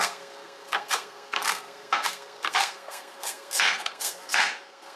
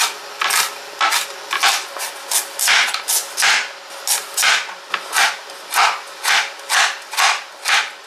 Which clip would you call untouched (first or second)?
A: second